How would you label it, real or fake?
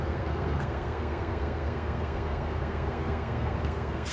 fake